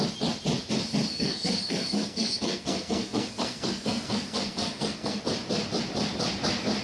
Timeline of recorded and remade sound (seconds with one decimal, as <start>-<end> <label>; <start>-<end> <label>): 0.0-1.1 recorded; 1.1-5.2 remade; 5.2-6.8 recorded